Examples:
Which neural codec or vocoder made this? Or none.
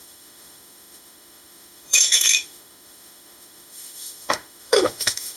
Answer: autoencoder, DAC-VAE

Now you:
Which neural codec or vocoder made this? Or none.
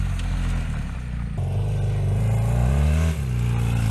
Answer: none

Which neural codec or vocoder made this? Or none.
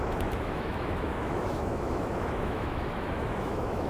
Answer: autoencoder, DAC-VAE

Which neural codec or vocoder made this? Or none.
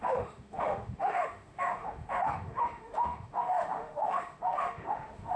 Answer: autoencoder, DAC-VAE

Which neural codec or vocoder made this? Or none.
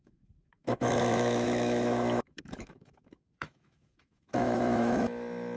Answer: autoencoder, DAC-VAE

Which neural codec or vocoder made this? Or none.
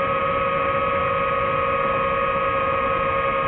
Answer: none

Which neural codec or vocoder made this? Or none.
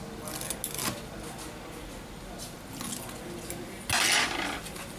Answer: none